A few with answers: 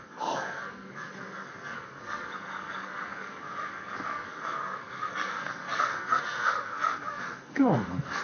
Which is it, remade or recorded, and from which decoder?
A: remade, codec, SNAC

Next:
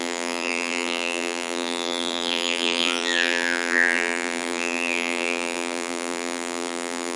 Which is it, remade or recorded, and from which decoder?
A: remade, vocoder, BigVGAN v2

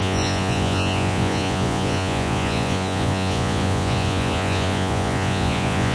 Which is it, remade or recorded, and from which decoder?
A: remade, vocoder, Vocos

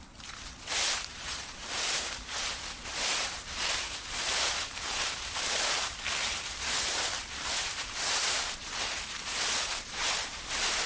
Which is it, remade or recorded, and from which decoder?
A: remade, vocoder, BigVGAN v2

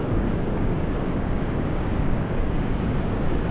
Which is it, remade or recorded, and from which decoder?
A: remade, codec, DAC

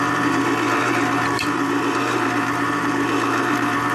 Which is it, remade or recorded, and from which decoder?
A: remade, vocoder, BigVGAN v2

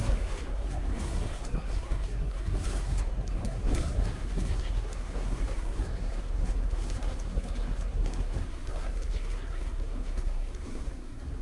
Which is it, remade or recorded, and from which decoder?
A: remade, codec, SNAC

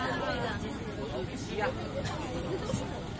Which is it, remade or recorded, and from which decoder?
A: recorded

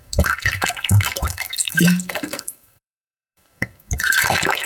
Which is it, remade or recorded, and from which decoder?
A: remade, codec, SNAC